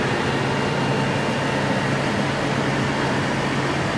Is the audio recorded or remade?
recorded